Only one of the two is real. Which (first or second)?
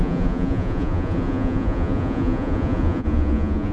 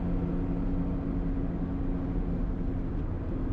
second